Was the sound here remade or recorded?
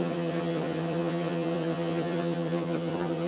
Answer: remade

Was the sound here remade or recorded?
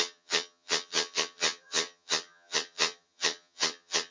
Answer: remade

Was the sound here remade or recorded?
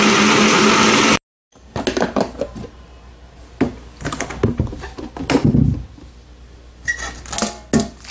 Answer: recorded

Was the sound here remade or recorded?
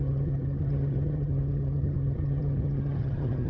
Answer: remade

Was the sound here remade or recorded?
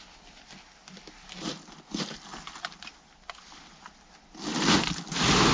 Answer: recorded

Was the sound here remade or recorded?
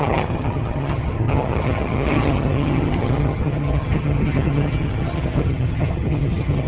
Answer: remade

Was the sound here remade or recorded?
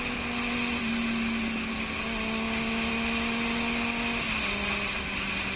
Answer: recorded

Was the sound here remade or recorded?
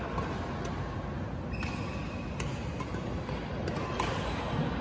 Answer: recorded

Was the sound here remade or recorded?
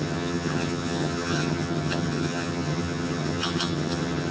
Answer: remade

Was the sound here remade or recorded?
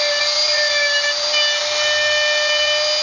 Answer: recorded